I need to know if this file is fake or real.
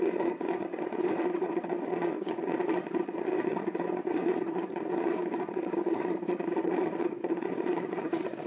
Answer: fake